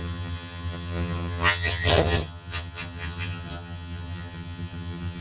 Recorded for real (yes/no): no